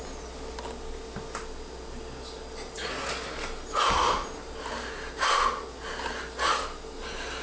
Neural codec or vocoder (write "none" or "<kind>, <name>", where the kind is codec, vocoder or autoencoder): none